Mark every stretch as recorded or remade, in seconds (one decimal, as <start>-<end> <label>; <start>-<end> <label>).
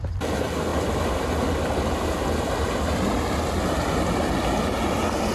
0.0-5.3 recorded